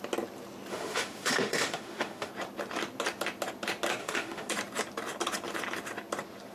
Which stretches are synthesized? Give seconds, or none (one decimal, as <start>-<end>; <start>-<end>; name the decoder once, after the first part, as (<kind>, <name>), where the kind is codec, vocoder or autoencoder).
0.7-2.3 (autoencoder, DAC-VAE); 4.0-4.5